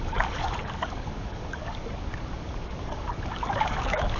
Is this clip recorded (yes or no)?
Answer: no